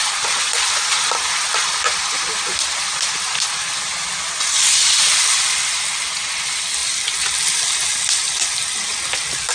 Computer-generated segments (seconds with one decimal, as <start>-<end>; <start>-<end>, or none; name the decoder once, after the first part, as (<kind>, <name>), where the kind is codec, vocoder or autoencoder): none